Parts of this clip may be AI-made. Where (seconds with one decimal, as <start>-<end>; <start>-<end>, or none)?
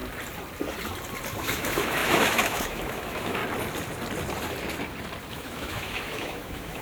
1.4-3.4; 5.3-6.8